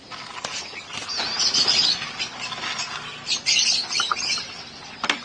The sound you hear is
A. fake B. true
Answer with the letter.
B